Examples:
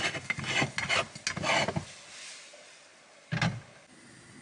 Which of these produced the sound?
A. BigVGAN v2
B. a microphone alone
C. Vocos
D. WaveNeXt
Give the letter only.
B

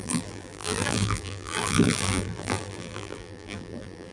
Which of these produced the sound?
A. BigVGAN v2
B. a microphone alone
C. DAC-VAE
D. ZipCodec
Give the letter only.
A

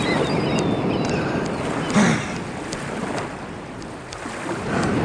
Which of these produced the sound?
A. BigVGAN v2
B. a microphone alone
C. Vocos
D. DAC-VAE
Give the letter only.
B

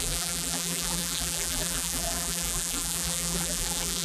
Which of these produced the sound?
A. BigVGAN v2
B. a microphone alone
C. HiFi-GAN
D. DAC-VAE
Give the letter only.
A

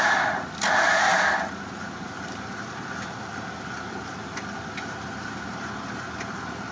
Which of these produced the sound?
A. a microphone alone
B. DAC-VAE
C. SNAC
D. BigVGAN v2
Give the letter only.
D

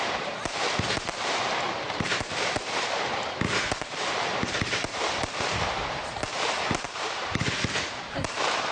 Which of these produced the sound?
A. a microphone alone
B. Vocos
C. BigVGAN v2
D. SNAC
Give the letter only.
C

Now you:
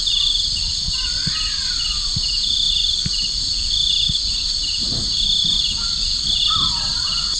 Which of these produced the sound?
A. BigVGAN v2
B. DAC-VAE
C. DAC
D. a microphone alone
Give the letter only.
D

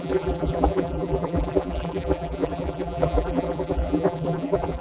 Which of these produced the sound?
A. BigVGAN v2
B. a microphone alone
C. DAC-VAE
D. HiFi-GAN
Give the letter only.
A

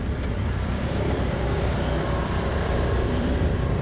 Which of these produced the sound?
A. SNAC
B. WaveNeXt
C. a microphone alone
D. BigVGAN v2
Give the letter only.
D